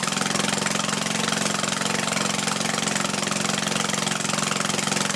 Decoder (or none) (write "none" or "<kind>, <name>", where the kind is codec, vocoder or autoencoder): none